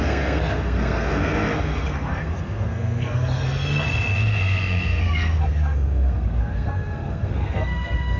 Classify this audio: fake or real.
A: fake